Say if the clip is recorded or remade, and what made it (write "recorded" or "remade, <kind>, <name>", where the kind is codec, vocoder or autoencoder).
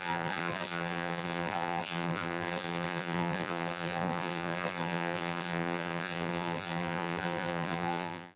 remade, vocoder, BigVGAN v2